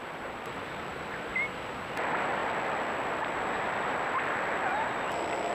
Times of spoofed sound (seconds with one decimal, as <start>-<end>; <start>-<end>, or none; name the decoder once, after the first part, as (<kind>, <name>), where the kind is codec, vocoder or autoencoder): 0.0-1.3 (vocoder, BigVGAN v2); 1.9-5.5